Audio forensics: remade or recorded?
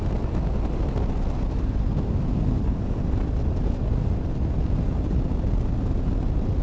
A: recorded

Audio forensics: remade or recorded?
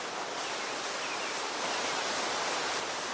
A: recorded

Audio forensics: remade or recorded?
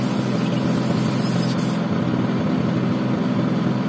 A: recorded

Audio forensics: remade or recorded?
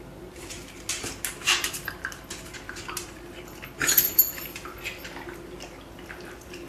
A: recorded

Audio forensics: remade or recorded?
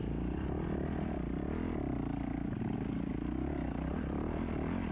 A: recorded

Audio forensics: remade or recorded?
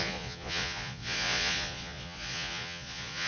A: remade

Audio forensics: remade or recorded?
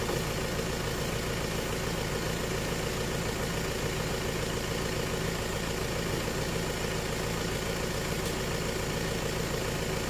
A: recorded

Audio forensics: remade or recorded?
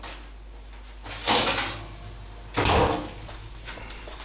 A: recorded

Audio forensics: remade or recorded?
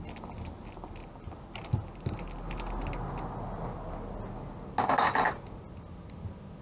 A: recorded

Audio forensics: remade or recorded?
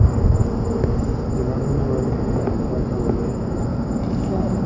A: recorded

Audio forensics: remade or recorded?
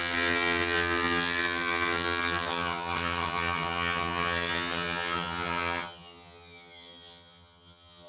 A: remade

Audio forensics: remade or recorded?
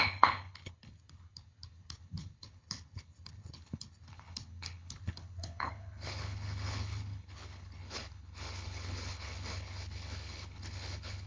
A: remade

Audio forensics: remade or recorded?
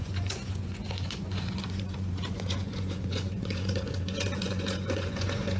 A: remade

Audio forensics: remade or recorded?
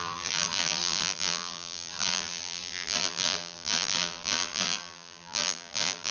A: remade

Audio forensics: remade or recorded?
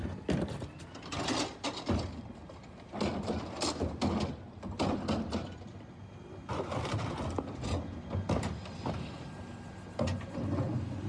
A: recorded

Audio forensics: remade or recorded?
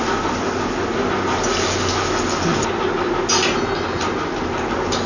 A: recorded